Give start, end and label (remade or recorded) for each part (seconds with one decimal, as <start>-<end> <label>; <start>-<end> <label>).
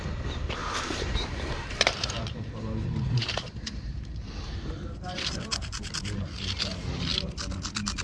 0.0-0.6 recorded; 0.6-5.4 remade; 5.4-8.0 recorded